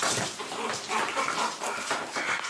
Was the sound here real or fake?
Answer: real